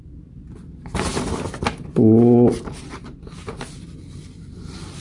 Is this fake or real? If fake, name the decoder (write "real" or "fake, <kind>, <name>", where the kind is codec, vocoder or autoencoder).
real